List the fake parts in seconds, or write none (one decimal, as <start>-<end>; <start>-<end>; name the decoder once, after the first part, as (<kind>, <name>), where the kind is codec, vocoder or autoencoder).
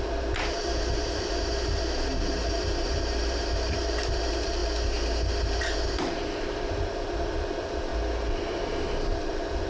0.0-4.6 (vocoder, BigVGAN v2); 5.4-7.9; 9.0-9.7